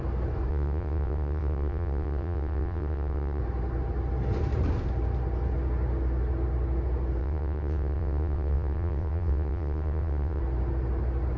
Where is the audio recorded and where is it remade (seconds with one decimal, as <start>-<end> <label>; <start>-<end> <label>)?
0.0-0.5 recorded; 0.5-3.4 remade; 3.4-7.2 recorded; 7.2-10.4 remade; 10.4-11.4 recorded